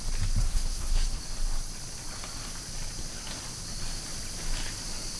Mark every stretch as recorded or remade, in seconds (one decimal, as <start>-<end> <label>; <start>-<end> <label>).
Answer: 0.0-0.4 recorded; 0.4-1.2 remade; 1.2-5.2 recorded